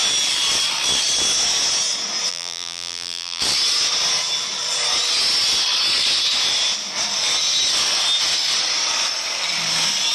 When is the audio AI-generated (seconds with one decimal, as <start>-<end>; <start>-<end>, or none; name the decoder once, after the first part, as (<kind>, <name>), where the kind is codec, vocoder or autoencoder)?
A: 2.3-3.4 (vocoder, BigVGAN v2)